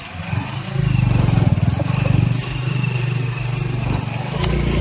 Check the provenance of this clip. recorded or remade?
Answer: recorded